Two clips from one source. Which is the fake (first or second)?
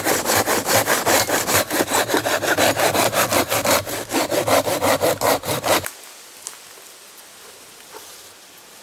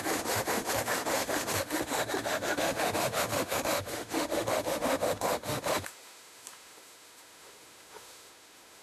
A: second